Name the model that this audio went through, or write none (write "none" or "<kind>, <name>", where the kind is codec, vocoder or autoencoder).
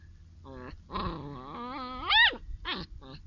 none